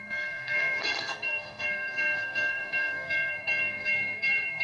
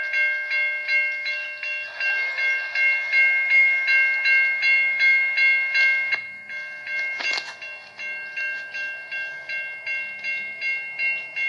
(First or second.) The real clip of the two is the second